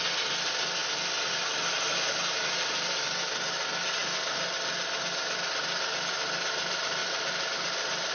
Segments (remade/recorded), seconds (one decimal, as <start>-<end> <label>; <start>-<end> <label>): 0.0-7.0 recorded; 7.0-8.1 remade